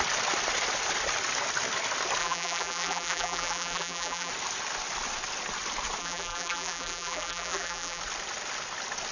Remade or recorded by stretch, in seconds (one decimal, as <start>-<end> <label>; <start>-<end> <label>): 0.0-2.2 recorded; 2.2-4.3 remade; 4.3-6.0 recorded; 6.0-8.0 remade; 8.0-9.1 recorded